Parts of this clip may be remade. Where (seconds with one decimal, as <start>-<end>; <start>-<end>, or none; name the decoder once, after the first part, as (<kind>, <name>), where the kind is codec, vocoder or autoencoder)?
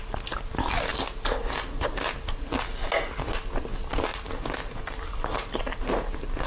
none